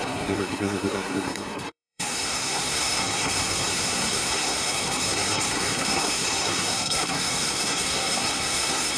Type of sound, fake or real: fake